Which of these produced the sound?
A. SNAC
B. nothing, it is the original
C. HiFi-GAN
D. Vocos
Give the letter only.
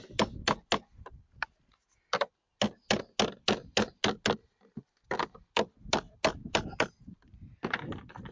B